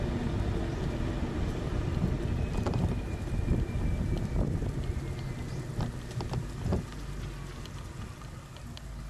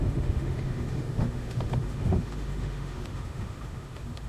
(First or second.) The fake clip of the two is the second